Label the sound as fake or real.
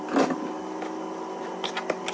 real